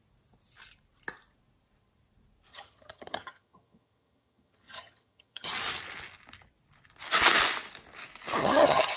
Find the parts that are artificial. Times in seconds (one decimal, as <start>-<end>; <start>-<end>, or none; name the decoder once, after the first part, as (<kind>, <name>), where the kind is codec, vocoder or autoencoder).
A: 2.5-5.5 (vocoder, HiFi-GAN); 8.4-9.0